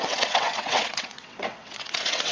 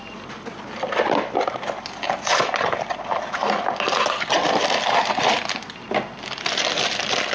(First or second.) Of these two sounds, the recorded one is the second